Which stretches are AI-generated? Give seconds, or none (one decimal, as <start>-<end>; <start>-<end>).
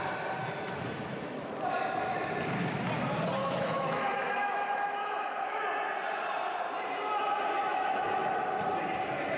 0.4-1.5; 3.4-5.6; 7.7-8.3